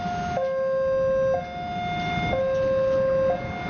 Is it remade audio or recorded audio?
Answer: recorded